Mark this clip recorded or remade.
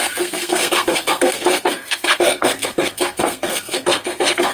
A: remade